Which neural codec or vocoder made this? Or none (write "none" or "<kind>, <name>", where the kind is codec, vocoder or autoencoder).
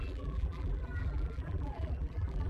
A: vocoder, BigVGAN v2